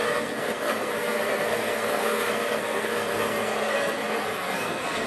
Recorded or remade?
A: remade